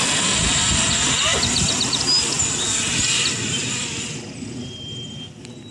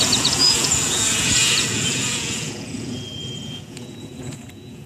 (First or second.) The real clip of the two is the first